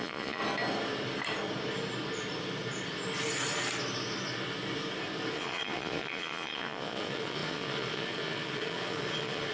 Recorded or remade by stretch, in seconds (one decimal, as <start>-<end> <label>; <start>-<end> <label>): 0.0-0.4 remade; 0.4-5.3 recorded; 5.3-9.5 remade